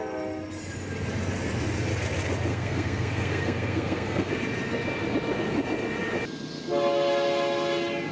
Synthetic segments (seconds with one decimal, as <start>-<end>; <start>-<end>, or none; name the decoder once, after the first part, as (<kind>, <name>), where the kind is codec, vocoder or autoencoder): 2.5-4.3 (codec, SNAC)